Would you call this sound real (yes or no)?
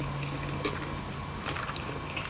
yes